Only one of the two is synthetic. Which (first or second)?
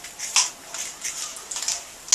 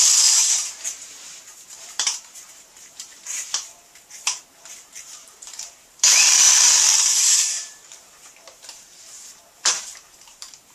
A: second